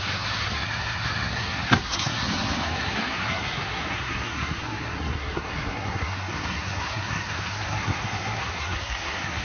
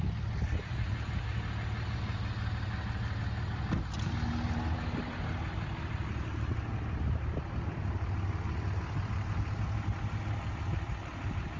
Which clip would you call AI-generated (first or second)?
first